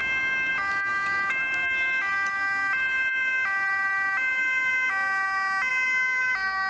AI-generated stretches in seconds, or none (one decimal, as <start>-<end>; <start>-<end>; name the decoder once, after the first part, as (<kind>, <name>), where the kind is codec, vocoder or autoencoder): none